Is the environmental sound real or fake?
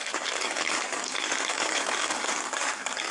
fake